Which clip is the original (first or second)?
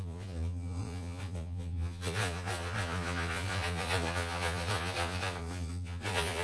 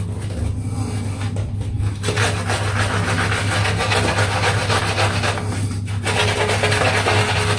second